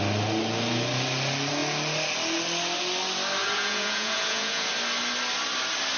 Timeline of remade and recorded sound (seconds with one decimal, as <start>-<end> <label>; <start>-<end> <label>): 0.0-3.4 recorded; 3.4-4.7 remade; 4.7-6.0 recorded